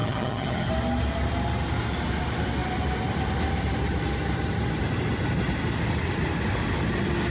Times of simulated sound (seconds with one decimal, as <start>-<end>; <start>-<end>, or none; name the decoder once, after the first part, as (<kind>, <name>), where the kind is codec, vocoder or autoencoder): 0.0-0.7 (vocoder, HiFi-GAN)

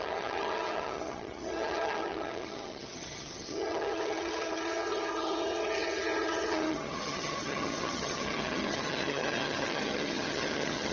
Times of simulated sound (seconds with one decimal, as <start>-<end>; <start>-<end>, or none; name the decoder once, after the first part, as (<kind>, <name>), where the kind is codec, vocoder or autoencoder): 0.0-10.9 (vocoder, HiFi-GAN)

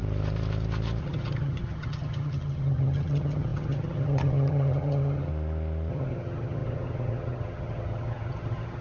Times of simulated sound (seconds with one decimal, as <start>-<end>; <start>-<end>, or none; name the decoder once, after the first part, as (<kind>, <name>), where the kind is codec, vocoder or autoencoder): 1.0-5.3 (vocoder, HiFi-GAN); 5.9-8.8

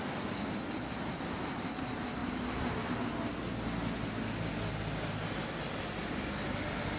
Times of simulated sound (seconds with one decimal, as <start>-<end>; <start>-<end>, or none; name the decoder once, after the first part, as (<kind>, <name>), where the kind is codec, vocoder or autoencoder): none

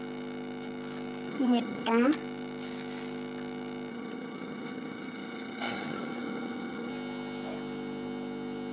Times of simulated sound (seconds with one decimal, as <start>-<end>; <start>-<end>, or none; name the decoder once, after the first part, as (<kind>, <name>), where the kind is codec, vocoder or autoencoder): 1.3-1.9 (vocoder, HiFi-GAN); 3.9-6.9

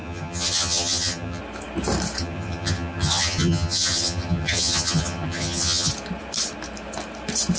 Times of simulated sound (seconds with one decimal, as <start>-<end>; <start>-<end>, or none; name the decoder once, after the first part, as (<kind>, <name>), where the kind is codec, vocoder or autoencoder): 0.0-1.4 (vocoder, HiFi-GAN); 2.2-5.9